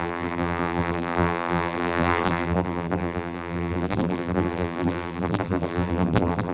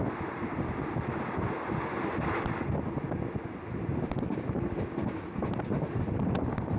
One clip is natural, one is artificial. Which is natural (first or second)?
second